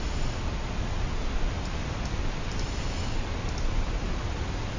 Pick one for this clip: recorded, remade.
recorded